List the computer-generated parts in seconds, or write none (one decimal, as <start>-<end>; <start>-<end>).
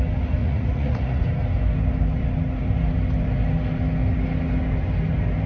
0.4-1.2